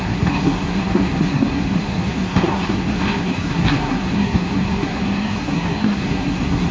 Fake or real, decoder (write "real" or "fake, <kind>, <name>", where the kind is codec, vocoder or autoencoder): fake, codec, SNAC